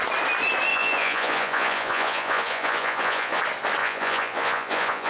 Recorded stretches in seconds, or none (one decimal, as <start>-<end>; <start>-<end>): 0.0-0.7; 3.4-3.8